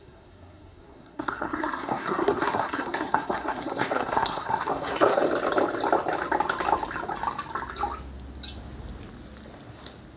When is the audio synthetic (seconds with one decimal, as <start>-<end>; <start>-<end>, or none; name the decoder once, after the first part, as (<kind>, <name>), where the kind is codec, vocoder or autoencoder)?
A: 0.0-5.2 (codec, SNAC)